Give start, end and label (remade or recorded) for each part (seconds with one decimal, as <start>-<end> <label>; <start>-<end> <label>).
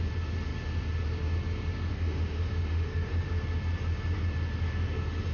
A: 0.0-1.9 recorded; 1.9-3.3 remade; 3.3-5.3 recorded